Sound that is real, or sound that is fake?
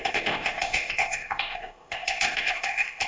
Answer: fake